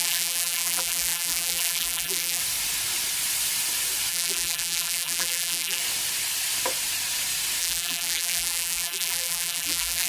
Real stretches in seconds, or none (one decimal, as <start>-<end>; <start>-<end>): 2.4-4.1; 5.8-7.6